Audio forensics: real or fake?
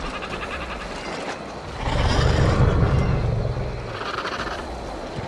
real